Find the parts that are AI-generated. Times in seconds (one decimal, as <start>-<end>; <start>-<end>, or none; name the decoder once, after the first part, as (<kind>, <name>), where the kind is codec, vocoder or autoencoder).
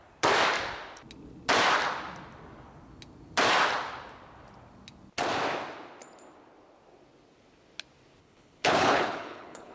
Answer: 8.2-9.7 (codec, HILCodec)